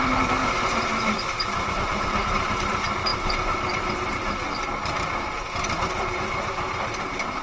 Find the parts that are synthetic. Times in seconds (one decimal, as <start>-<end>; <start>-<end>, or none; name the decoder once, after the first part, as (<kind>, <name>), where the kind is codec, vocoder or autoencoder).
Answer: 0.0-0.4 (vocoder, BigVGAN v2); 1.0-7.4